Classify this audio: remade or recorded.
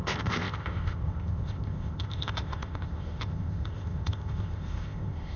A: remade